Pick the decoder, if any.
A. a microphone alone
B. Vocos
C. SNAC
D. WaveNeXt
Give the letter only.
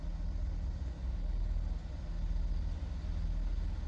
A